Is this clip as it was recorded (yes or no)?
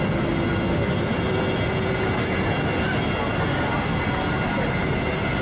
yes